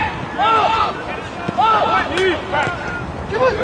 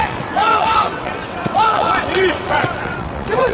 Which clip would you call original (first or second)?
first